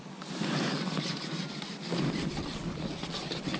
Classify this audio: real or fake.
real